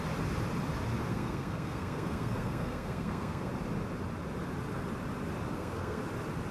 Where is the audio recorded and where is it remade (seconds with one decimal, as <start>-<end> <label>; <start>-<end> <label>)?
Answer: 0.0-1.1 recorded; 1.1-3.5 remade; 3.5-5.5 recorded; 5.5-6.0 remade; 6.0-6.5 recorded